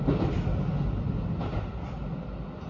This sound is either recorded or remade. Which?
recorded